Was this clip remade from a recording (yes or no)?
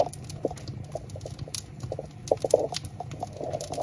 no